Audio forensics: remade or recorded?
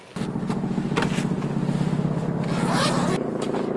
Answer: recorded